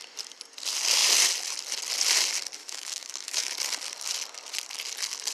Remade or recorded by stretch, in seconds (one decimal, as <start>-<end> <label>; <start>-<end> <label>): 0.0-2.6 recorded; 2.6-3.5 remade; 3.5-5.3 recorded